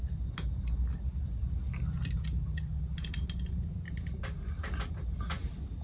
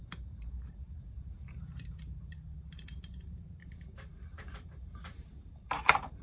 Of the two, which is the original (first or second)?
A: first